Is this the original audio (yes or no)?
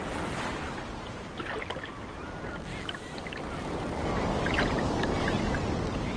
yes